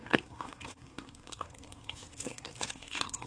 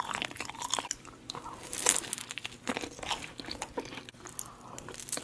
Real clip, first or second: second